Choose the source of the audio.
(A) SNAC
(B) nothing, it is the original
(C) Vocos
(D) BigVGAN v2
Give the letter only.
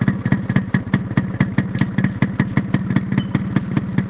B